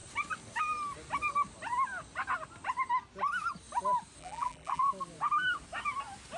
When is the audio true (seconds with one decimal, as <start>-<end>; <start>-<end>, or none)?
0.0-4.2; 4.9-6.4